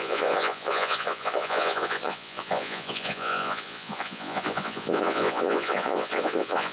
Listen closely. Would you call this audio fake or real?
fake